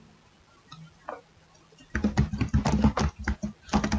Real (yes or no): yes